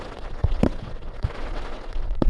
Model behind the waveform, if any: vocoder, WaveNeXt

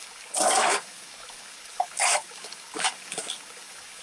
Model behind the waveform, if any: codec, DAC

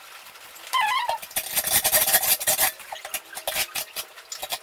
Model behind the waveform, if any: none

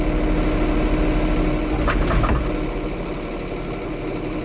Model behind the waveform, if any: none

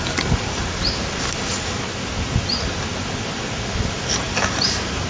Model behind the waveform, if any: none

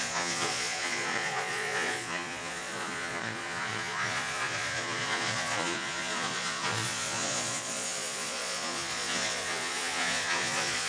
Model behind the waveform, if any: vocoder, Vocos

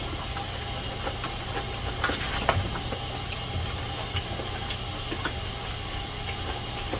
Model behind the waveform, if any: none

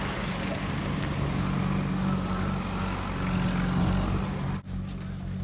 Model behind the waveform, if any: none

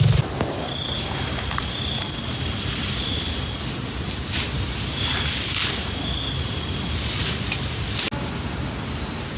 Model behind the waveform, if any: none